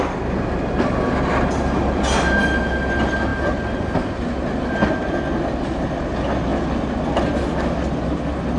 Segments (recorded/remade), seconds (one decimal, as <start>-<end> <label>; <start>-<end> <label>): 0.0-8.6 recorded